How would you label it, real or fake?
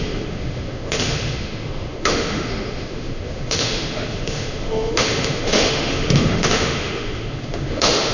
fake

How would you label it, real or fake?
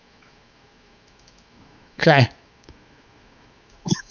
fake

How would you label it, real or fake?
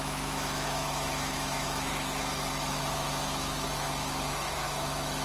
fake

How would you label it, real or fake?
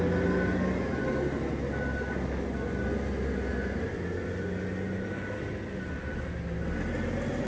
real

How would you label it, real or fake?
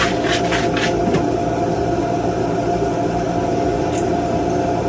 real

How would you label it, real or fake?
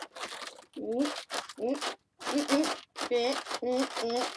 real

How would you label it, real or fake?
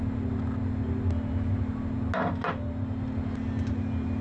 real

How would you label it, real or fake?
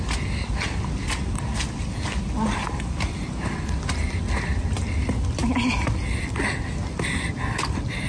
real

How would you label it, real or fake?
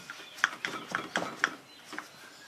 real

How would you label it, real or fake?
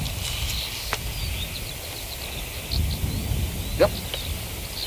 real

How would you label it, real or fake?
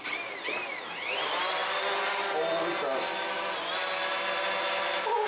real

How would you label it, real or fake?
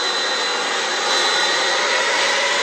real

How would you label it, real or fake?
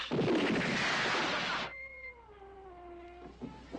real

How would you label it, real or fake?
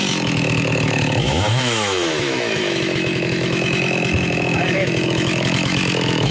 fake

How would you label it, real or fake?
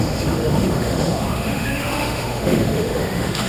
fake